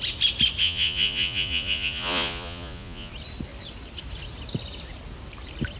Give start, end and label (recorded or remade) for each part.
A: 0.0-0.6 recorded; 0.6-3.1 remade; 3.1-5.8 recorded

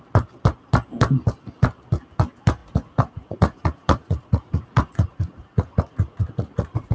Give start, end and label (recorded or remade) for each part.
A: 0.0-2.6 recorded; 2.6-6.9 remade

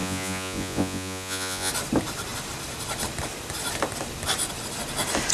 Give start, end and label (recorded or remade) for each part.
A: 0.0-1.7 remade; 1.7-5.3 recorded